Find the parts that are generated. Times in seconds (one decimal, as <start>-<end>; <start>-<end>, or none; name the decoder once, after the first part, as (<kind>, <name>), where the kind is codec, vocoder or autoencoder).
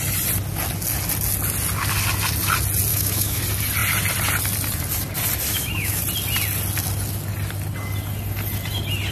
2.9-3.4 (autoencoder, DAC-VAE); 5.5-6.0